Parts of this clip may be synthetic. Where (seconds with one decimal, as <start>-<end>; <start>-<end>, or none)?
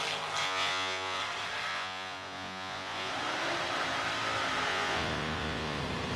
0.4-1.2; 1.7-3.1; 4.7-5.8